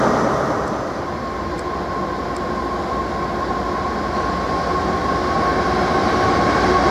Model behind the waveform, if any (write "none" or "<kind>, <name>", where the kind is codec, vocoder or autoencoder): none